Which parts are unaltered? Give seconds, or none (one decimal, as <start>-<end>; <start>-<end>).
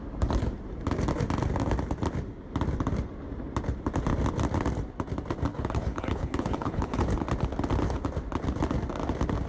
0.0-5.5; 7.0-9.5